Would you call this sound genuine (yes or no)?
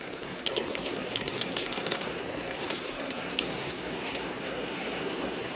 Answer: no